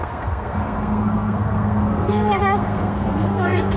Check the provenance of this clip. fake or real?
fake